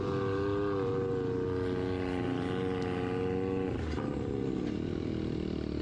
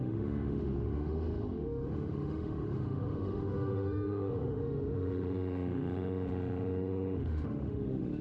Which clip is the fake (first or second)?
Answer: second